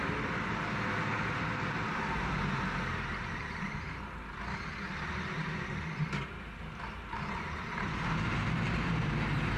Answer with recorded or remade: remade